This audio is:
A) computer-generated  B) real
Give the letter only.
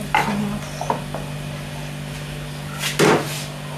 B